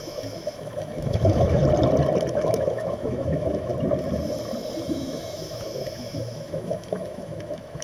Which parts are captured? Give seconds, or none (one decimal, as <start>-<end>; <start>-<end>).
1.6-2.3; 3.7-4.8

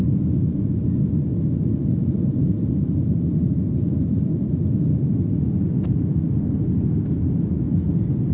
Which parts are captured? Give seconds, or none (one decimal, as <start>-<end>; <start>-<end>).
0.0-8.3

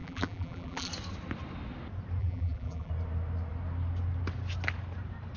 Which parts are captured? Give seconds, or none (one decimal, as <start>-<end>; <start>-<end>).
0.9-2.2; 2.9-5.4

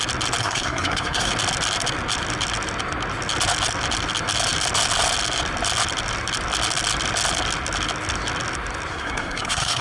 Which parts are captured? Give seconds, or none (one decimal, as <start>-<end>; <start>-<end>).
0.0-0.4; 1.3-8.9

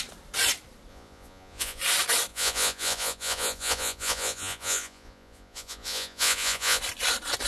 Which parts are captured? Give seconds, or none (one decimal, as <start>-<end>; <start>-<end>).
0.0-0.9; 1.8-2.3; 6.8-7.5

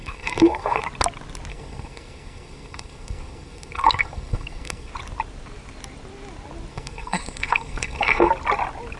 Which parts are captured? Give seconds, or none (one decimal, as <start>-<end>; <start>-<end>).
0.8-1.5; 4.9-6.7; 8.3-9.0

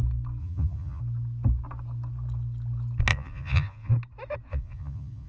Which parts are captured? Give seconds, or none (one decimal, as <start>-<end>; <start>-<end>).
0.0-0.4; 1.0-3.1; 3.9-4.5

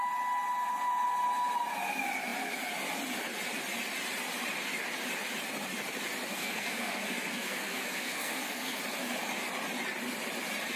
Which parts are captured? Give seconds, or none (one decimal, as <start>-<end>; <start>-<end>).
0.0-6.3; 8.8-10.8